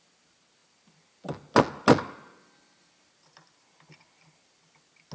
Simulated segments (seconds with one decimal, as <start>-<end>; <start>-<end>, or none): none